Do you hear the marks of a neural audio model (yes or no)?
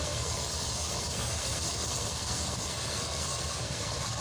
yes